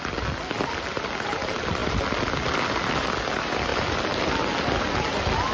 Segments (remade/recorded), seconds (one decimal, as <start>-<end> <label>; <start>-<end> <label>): 0.0-5.5 recorded